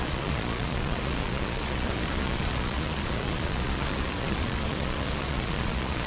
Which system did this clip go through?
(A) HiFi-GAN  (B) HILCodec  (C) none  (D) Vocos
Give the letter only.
D